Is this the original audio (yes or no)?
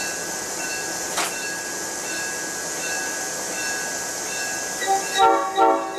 yes